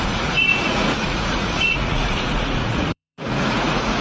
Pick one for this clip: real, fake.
fake